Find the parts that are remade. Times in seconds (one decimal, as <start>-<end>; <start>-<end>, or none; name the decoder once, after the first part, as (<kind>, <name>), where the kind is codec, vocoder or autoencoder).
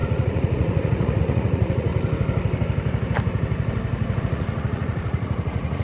0.0-1.9 (vocoder, Vocos); 4.2-5.8